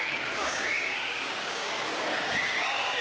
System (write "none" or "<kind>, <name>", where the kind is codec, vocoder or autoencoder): codec, DAC